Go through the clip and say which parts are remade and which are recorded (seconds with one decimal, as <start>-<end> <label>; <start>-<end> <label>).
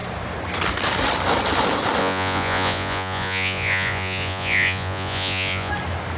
0.0-2.0 recorded; 2.0-5.7 remade; 5.7-6.2 recorded